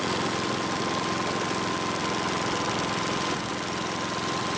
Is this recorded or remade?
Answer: remade